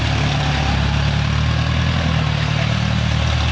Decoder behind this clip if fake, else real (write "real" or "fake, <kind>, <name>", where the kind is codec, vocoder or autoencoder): real